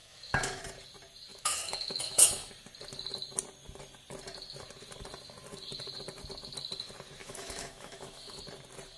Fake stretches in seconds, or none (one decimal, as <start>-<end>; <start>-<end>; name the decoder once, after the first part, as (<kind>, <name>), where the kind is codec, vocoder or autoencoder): 0.0-0.6 (autoencoder, DAC-VAE); 1.3-2.5; 7.2-8.4